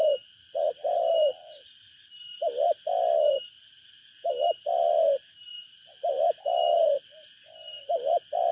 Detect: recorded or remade recorded